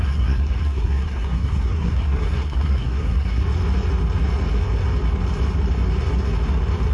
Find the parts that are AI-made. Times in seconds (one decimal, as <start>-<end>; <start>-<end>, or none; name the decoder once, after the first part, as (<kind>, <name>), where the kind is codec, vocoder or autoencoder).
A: 0.0-3.4 (codec, SNAC)